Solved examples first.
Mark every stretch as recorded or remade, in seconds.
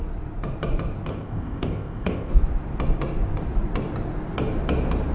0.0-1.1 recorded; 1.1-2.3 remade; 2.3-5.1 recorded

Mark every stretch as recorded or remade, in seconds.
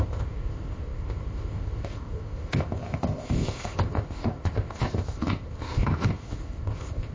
0.0-7.1 remade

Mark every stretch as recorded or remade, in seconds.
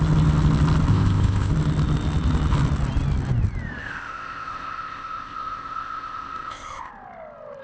0.0-0.9 recorded; 0.9-1.5 remade; 1.5-3.8 recorded; 3.8-6.9 remade; 6.9-7.6 recorded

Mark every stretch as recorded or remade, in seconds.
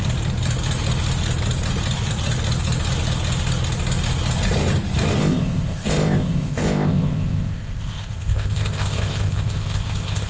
0.0-5.2 recorded; 5.2-10.3 remade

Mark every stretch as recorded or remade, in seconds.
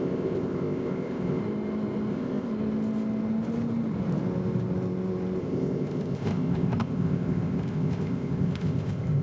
0.0-1.4 remade; 1.4-2.1 recorded; 2.1-2.5 remade; 2.5-5.4 recorded; 5.4-9.2 remade